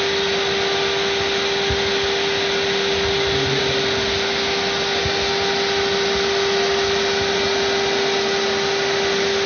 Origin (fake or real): real